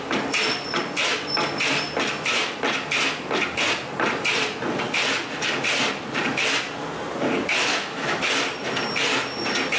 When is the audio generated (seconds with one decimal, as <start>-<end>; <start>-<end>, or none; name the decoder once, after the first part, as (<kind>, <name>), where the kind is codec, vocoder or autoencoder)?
7.7-8.3 (autoencoder, DAC-VAE)